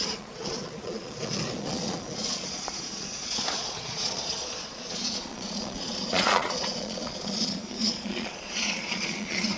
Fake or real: fake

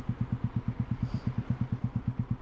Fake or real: real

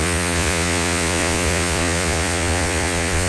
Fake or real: fake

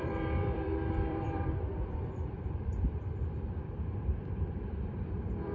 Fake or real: fake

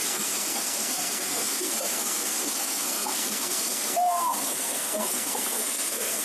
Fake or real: fake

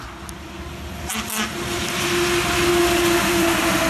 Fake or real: real